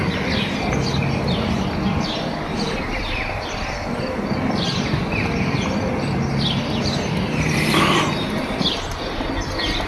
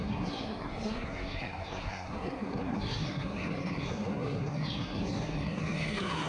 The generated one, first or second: second